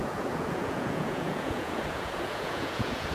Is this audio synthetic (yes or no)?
yes